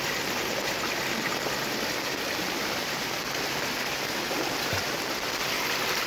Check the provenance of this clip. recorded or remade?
recorded